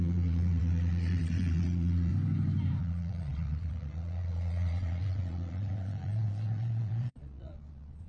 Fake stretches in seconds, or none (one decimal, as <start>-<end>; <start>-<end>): 0.0-2.1; 2.8-8.1